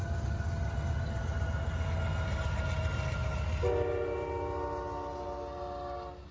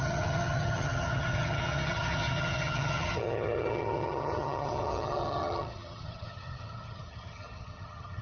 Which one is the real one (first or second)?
first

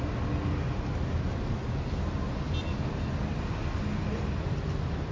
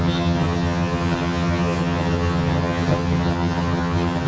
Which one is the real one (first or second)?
first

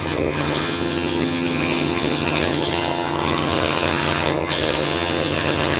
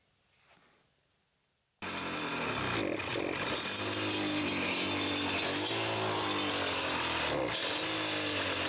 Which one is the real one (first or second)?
second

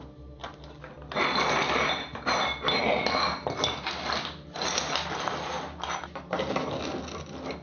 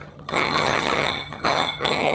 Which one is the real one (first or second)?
first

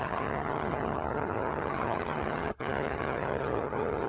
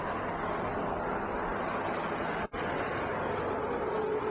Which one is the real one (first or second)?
second